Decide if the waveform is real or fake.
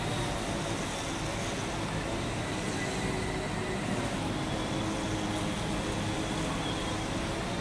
real